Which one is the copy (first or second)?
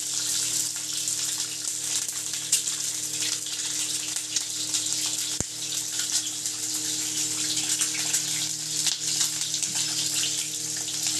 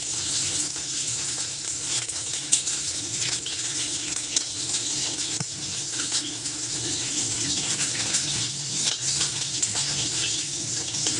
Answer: second